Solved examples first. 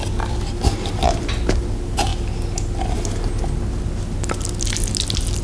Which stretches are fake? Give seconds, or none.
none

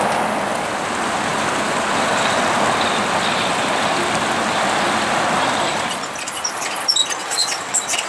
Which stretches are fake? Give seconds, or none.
7.2-8.1 (vocoder, WaveNeXt)

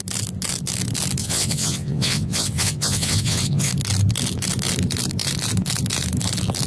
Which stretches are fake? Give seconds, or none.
1.2-3.7 (vocoder, WaveNeXt)

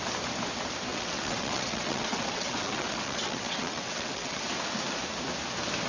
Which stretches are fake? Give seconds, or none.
0.9-4.4 (vocoder, WaveNeXt)

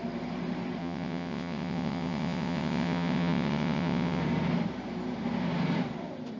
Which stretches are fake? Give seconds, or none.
0.8-4.2 (vocoder, WaveNeXt)